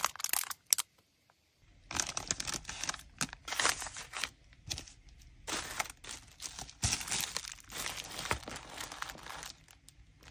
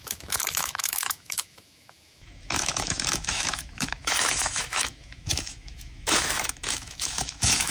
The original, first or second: first